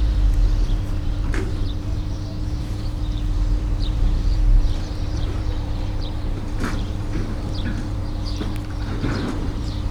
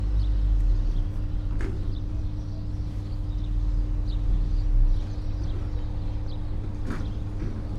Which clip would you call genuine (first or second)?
second